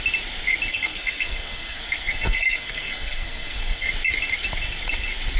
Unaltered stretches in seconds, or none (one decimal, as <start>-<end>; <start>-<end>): 0.0-0.7; 3.9-5.4